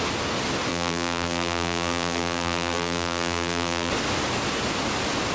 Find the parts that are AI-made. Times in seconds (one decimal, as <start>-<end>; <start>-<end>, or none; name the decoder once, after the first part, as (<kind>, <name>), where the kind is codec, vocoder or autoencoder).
0.7-3.9 (vocoder, BigVGAN v2)